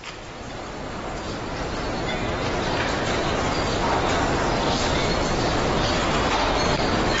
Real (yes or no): yes